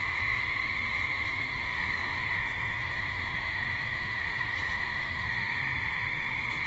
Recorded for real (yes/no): no